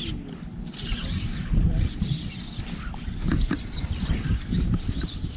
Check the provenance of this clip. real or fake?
real